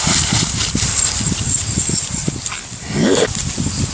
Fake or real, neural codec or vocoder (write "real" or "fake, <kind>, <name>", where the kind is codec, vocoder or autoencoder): real